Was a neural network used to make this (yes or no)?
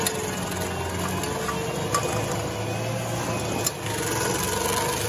no